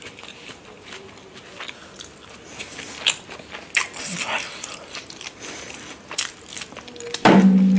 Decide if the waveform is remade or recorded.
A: recorded